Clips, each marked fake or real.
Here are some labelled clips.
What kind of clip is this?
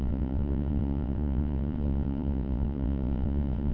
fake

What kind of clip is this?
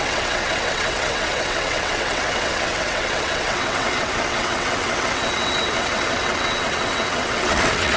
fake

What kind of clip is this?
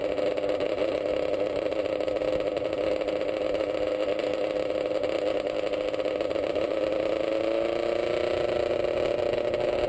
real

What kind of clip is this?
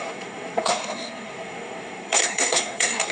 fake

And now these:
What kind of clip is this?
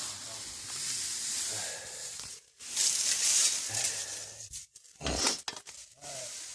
real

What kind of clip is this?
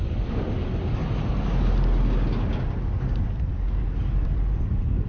real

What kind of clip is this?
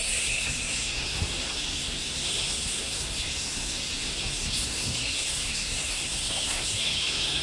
fake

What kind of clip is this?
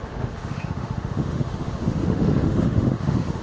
fake